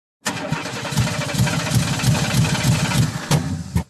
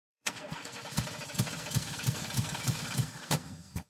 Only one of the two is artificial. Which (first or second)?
second